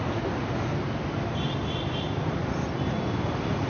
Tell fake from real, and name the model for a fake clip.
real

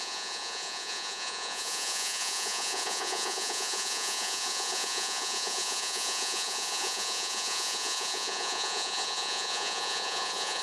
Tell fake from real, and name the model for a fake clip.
fake, vocoder, Vocos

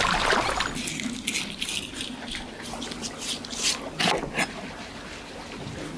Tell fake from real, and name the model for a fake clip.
real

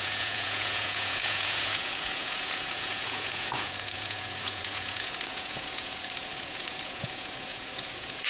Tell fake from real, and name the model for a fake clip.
fake, vocoder, Vocos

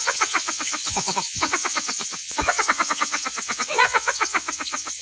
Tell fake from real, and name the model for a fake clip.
fake, vocoder, WaveNeXt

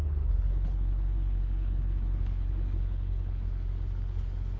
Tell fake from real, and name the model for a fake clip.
fake, codec, HILCodec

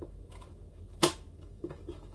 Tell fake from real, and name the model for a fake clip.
fake, autoencoder, DAC-VAE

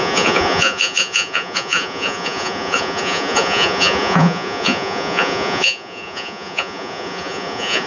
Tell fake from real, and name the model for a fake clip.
fake, vocoder, Vocos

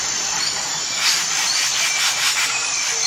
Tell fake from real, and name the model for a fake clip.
fake, vocoder, BigVGAN v2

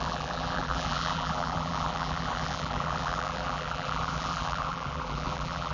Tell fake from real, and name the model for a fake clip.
fake, vocoder, BigVGAN v2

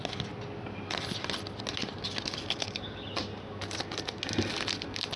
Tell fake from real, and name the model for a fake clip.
real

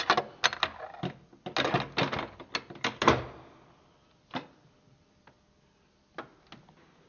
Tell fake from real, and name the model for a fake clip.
real